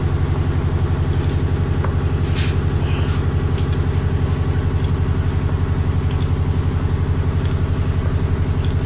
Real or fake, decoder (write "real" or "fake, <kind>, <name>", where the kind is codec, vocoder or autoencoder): real